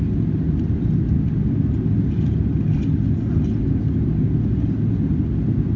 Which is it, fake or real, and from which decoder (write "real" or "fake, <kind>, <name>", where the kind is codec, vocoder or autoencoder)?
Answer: real